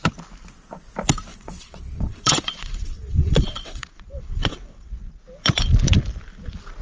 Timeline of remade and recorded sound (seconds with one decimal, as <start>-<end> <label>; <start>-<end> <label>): 0.0-1.3 recorded; 1.3-4.9 remade; 4.9-6.8 recorded